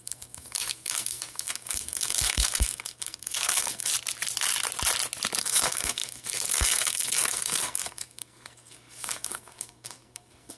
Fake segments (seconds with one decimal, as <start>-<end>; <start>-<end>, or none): 0.0-3.9; 5.4-10.6